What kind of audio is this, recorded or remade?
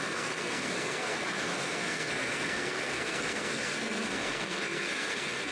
remade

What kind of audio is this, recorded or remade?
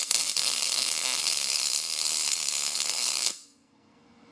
remade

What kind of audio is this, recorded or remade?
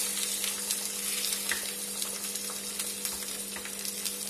recorded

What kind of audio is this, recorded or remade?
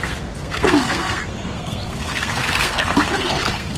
remade